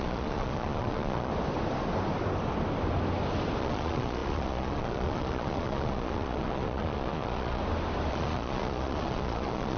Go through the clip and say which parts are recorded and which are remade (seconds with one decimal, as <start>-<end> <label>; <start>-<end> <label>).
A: 0.0-1.3 remade; 1.3-3.6 recorded; 3.6-7.6 remade; 7.6-8.1 recorded; 8.1-9.8 remade